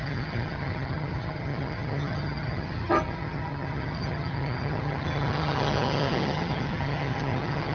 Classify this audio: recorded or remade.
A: remade